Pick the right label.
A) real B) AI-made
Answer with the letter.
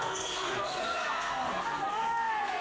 B